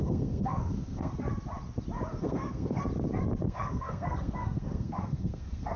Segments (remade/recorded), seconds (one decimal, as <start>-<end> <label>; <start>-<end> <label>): 0.0-1.1 remade; 1.1-2.2 recorded; 2.2-2.8 remade; 2.8-3.4 recorded; 3.4-5.8 remade